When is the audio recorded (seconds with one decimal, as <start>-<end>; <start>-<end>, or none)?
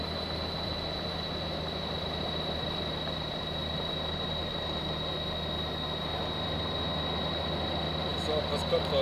0.0-9.0